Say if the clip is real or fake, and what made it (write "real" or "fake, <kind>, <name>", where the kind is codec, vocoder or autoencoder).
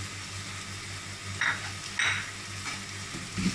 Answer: real